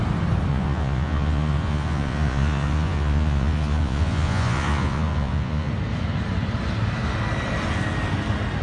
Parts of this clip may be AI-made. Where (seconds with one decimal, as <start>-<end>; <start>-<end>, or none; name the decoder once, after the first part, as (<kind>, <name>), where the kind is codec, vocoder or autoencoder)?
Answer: 0.5-5.7 (vocoder, Vocos)